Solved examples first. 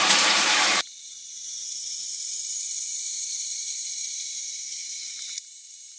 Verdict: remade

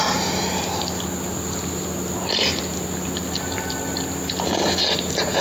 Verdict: recorded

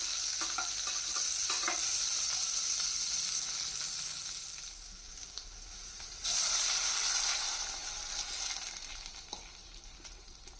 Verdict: recorded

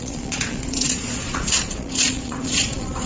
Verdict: remade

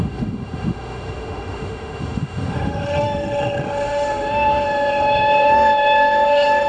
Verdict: remade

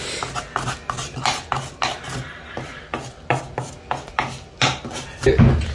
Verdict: recorded